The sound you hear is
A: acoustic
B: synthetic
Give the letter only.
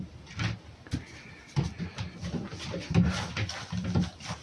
A